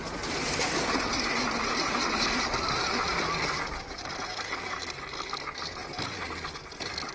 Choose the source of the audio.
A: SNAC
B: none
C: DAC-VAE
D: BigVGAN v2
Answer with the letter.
B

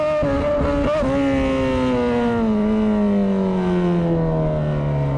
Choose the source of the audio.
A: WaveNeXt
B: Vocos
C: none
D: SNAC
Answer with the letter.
C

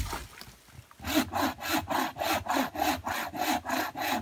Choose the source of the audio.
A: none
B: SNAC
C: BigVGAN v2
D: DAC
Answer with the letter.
A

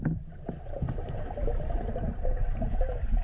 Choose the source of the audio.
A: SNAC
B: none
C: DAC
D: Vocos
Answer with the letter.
B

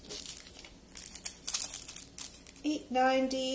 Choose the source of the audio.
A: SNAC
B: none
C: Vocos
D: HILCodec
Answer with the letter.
B